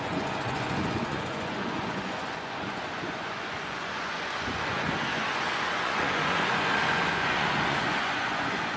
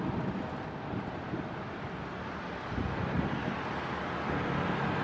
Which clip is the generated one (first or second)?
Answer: first